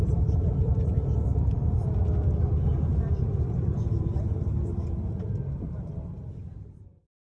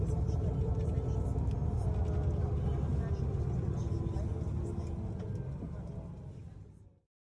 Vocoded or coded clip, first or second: first